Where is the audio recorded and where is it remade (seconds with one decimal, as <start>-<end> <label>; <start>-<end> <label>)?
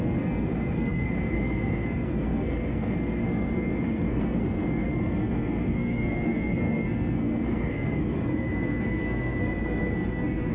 0.0-10.5 remade